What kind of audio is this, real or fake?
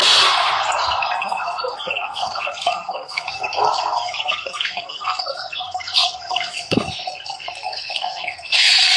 fake